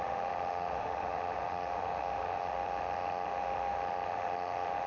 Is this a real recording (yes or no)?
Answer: no